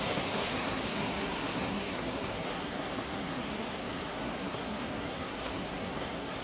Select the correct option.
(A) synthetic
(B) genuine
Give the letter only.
A